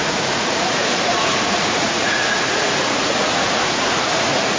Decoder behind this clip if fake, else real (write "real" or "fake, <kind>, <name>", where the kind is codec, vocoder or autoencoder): fake, vocoder, Vocos